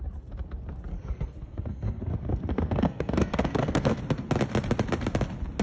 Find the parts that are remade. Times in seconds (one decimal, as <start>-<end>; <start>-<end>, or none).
0.9-4.0